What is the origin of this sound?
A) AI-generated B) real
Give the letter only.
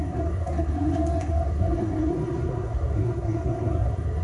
A